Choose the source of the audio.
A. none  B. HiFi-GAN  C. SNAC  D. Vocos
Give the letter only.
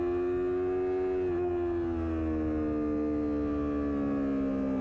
A